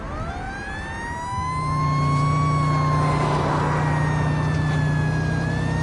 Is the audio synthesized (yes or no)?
no